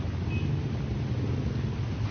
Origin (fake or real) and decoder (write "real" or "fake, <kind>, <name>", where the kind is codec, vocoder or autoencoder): real